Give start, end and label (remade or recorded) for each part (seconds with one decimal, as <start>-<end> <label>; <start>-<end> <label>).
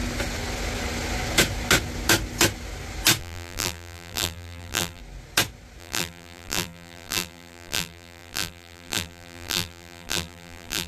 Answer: 0.0-3.2 recorded; 3.2-5.0 remade; 5.0-5.8 recorded; 5.8-10.9 remade